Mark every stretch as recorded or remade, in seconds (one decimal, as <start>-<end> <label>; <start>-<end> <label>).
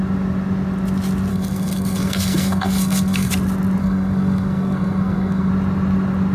0.0-1.3 recorded; 1.3-3.3 remade; 3.3-3.8 recorded; 3.8-5.5 remade; 5.5-6.3 recorded